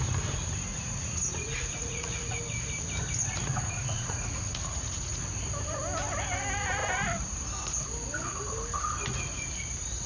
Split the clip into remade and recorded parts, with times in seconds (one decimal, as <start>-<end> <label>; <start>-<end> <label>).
0.0-0.7 recorded; 0.7-2.4 remade; 2.4-3.4 recorded; 3.4-5.2 remade; 5.2-10.1 recorded